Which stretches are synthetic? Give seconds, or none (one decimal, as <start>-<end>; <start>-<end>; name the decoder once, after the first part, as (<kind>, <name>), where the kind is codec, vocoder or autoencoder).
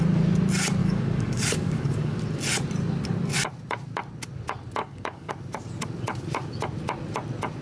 0.8-2.2 (codec, DAC); 4.8-5.3